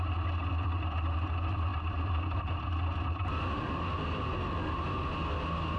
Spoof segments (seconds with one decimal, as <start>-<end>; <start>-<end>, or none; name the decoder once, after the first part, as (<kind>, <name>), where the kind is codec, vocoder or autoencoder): none

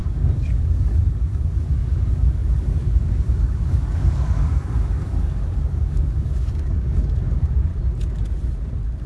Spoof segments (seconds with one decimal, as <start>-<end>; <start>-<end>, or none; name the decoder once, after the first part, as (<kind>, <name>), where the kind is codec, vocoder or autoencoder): 0.0-7.7 (codec, DAC)

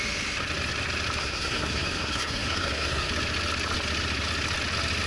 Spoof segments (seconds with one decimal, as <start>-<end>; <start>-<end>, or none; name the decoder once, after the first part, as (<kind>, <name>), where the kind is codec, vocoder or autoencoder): 1.2-3.1 (codec, SNAC)

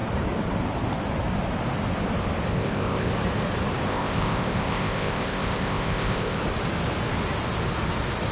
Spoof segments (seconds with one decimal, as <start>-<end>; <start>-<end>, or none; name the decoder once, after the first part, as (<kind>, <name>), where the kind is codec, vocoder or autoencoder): 2.5-3.1 (codec, ZipCodec); 3.9-6.4

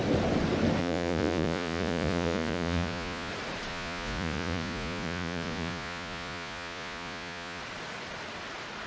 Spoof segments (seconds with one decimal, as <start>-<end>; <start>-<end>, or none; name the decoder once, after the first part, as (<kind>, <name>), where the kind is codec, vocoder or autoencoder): 0.8-3.3 (vocoder, Vocos); 3.7-7.6

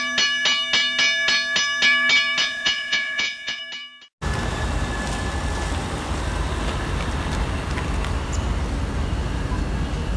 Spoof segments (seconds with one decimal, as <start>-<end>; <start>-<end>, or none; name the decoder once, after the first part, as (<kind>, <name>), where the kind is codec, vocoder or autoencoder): 2.4-3.6 (vocoder, Vocos)

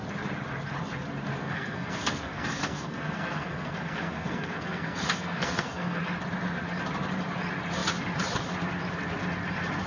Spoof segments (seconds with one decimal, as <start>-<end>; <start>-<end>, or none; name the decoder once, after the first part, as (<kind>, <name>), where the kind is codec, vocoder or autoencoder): 1.4-6.0 (codec, SNAC)